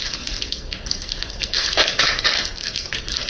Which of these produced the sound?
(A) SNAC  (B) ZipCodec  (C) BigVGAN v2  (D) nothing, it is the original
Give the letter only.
A